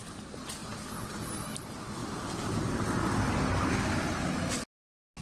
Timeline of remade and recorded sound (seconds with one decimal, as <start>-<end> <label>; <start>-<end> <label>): 0.0-5.2 recorded